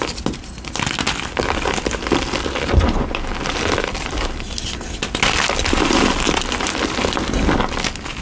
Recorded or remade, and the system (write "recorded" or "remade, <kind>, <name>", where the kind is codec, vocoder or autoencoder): recorded